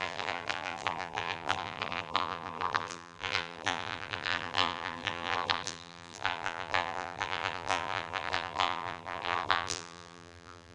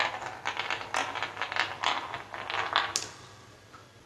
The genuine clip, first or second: second